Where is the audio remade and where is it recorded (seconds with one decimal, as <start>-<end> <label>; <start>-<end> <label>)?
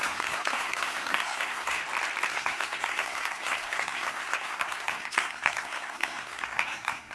0.0-1.8 remade; 1.8-2.3 recorded; 2.3-7.1 remade